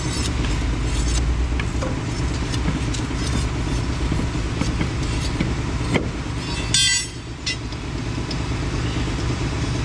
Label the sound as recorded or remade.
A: recorded